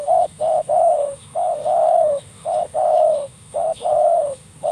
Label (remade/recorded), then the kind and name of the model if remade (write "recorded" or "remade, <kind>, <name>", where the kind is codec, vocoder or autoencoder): remade, autoencoder, DAC-VAE